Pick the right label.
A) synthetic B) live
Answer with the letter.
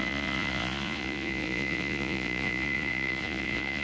A